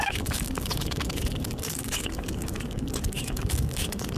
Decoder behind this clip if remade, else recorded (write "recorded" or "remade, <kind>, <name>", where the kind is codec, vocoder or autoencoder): remade, codec, DAC